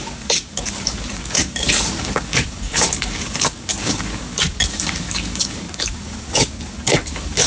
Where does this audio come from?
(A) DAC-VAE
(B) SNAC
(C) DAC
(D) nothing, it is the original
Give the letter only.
C